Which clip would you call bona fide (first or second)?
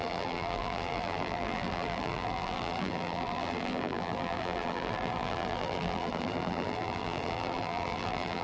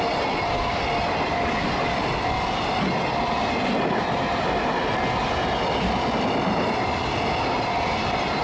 second